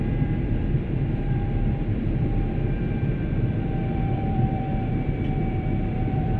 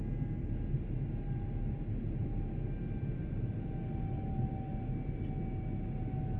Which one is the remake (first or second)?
first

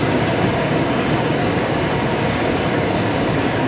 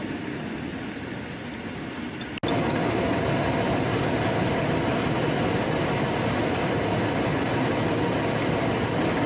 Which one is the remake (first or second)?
first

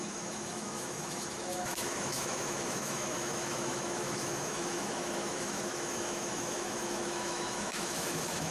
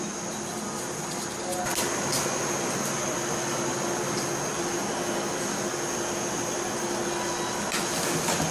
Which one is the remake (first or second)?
first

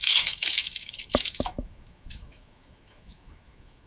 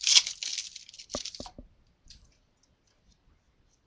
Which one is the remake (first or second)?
first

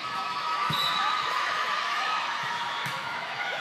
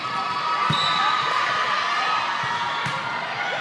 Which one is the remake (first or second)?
first